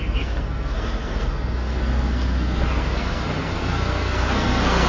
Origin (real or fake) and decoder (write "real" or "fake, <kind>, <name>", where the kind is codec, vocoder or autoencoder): fake, codec, SNAC